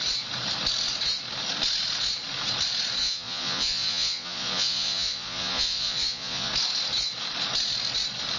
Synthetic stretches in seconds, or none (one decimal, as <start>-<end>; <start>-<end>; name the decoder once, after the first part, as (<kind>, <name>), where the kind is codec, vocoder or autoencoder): 3.0-6.5 (vocoder, Vocos)